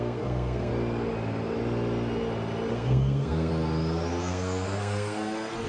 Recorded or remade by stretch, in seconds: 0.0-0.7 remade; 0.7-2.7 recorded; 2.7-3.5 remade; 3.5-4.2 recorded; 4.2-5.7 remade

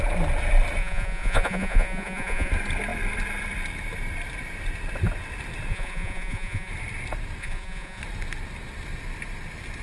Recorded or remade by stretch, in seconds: 0.0-0.8 recorded; 0.8-2.5 remade; 2.5-5.7 recorded; 5.7-6.7 remade; 6.7-7.4 recorded; 7.4-8.0 remade; 8.0-9.8 recorded

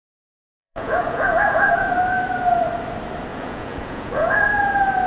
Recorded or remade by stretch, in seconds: 0.0-1.9 remade; 1.9-3.3 recorded; 3.3-4.5 remade; 4.5-5.1 recorded

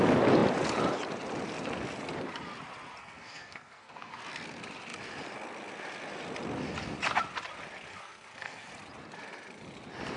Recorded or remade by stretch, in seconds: 0.0-3.0 recorded; 3.0-4.2 remade; 4.2-7.9 recorded; 7.9-8.7 remade; 8.7-10.2 recorded

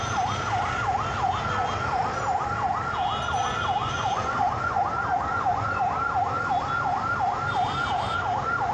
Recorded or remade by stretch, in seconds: 0.0-3.8 recorded; 3.8-4.8 remade; 4.8-5.3 recorded; 5.3-5.8 remade; 5.8-8.7 recorded

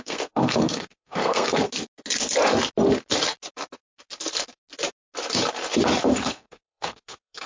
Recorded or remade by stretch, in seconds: 0.0-1.6 remade; 1.6-6.1 recorded; 6.1-7.5 remade

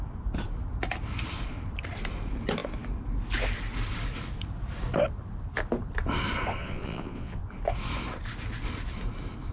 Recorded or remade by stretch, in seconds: 0.0-6.6 recorded; 6.6-7.4 remade; 7.4-9.5 recorded

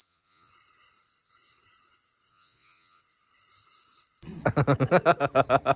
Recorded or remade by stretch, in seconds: 0.0-0.5 remade; 0.5-2.3 recorded; 2.3-3.0 remade; 3.0-5.8 recorded